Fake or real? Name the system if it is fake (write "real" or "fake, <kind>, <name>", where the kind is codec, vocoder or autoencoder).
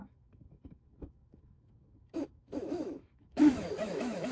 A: fake, autoencoder, DAC-VAE